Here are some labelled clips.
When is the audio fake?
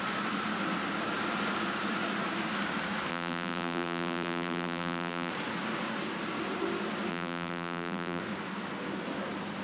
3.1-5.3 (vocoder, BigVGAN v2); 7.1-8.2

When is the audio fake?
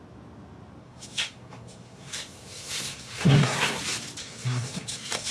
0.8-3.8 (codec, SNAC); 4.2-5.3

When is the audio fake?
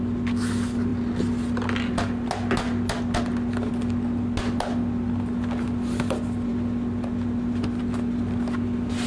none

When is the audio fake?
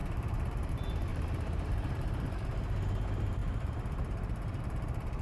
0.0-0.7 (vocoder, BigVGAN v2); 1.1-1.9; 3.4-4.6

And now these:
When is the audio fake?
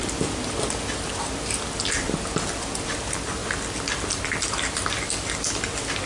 none